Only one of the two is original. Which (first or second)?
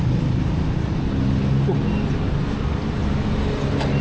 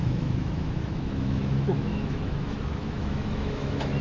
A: first